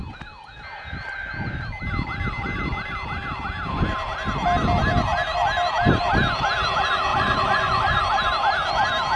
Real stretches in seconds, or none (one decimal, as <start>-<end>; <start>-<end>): 0.0-7.1; 8.0-9.2